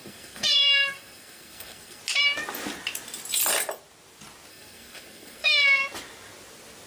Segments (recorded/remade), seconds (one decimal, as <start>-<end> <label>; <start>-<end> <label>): 0.0-2.0 remade; 2.0-4.5 recorded; 4.5-5.8 remade; 5.8-6.9 recorded